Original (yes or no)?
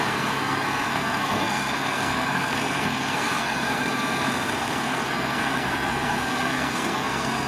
no